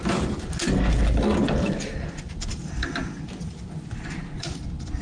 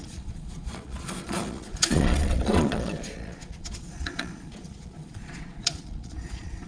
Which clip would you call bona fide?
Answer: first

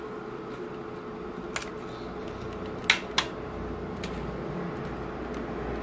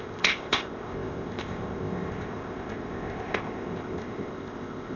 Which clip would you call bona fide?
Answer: first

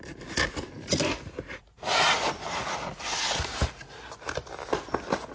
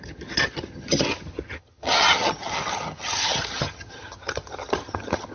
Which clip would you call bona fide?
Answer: first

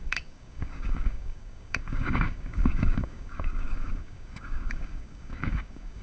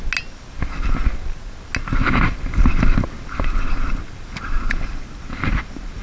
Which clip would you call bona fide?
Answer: second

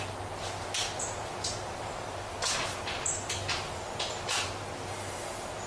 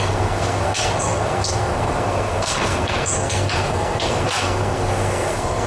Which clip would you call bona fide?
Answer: first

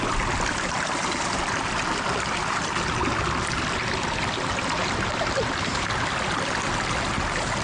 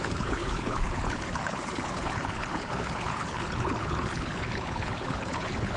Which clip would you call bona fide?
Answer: first